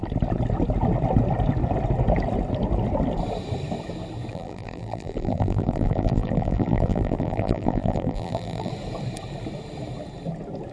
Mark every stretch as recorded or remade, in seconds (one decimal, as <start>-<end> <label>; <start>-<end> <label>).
0.0-4.3 recorded; 4.3-8.7 remade; 8.7-10.7 recorded